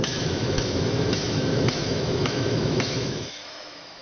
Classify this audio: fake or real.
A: fake